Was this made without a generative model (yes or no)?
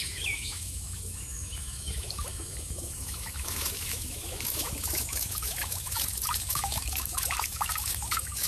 no